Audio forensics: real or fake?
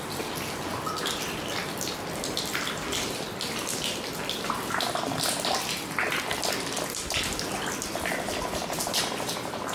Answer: real